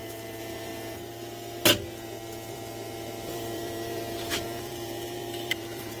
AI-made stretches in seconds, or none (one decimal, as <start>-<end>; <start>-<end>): 0.0-0.7; 2.5-6.0